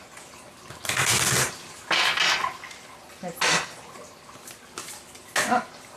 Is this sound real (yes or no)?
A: yes